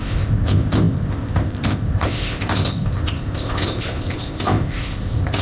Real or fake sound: fake